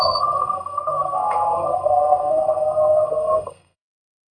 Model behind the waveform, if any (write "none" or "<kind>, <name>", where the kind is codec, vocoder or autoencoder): codec, SNAC